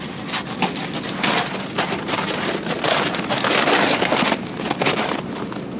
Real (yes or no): yes